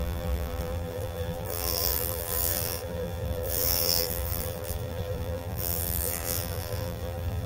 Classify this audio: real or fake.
fake